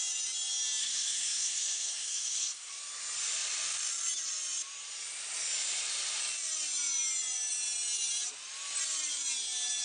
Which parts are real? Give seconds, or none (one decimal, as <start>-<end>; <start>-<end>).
0.0-0.8; 2.7-9.8